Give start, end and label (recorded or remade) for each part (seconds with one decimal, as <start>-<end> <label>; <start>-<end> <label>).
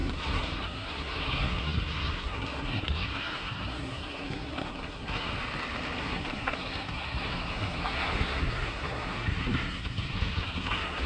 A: 0.0-5.3 remade; 5.3-6.0 recorded; 6.0-11.1 remade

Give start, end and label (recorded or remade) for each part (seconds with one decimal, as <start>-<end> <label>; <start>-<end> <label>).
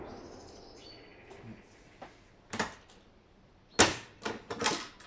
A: 0.0-5.1 recorded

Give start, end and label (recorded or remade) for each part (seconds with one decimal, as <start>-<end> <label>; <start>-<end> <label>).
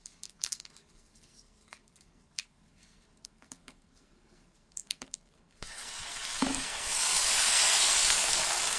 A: 0.0-8.8 remade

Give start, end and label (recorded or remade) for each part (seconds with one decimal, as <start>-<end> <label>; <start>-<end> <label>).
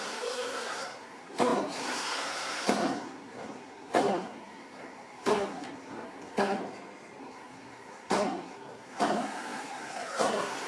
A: 0.0-6.6 remade; 6.6-7.2 recorded; 7.2-10.7 remade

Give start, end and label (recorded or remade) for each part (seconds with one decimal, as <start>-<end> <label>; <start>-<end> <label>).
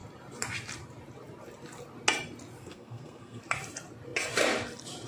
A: 0.0-2.6 recorded; 2.6-3.4 remade; 3.4-5.1 recorded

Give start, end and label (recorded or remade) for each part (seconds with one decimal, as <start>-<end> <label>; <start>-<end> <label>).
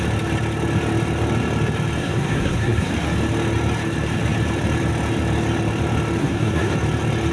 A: 0.0-2.0 recorded; 2.0-2.9 remade; 2.9-6.2 recorded; 6.2-6.7 remade; 6.7-7.3 recorded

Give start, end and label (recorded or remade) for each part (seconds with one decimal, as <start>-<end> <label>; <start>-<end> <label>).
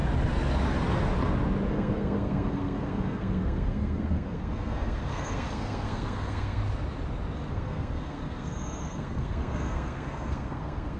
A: 0.0-1.7 recorded; 1.7-6.6 remade; 6.6-7.5 recorded; 7.5-11.0 remade